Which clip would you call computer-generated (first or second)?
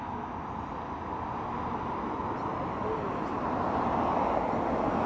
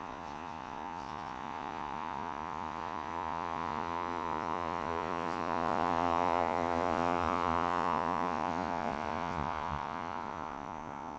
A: second